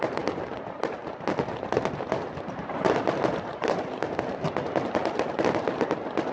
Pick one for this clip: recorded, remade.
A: recorded